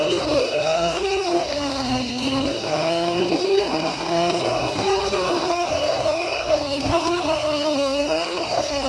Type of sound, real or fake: fake